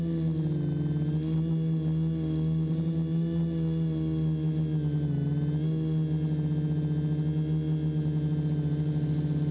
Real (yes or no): yes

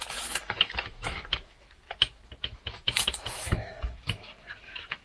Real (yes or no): no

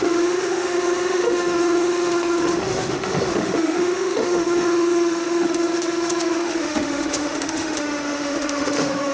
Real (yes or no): no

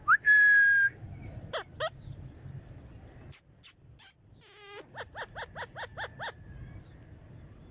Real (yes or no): yes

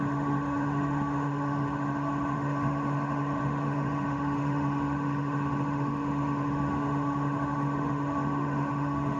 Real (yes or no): no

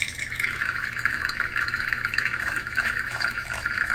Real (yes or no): no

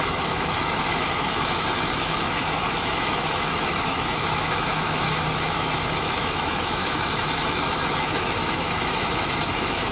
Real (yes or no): no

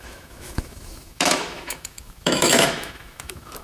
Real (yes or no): no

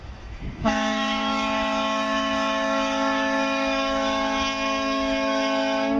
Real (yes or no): no